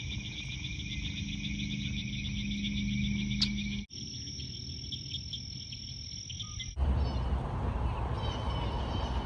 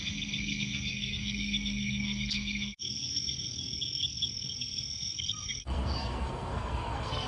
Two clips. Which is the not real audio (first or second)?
second